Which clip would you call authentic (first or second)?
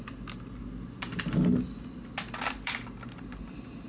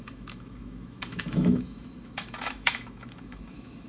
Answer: first